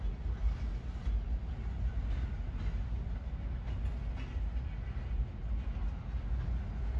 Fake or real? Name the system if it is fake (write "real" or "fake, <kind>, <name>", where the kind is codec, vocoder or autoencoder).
real